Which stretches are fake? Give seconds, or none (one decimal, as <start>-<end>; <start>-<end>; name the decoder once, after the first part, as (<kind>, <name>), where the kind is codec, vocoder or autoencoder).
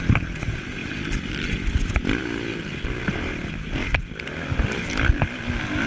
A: 0.8-1.8 (vocoder, BigVGAN v2)